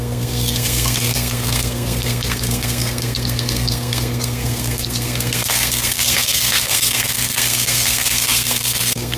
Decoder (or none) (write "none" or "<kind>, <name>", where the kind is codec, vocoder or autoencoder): codec, SNAC